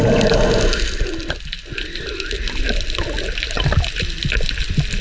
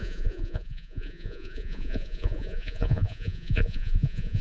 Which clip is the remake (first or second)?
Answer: second